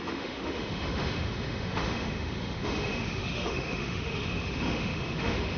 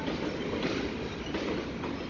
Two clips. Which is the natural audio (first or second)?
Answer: second